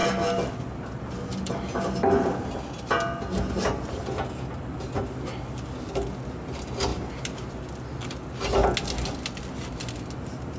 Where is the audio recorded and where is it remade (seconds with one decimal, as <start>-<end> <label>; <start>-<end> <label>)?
0.0-10.6 recorded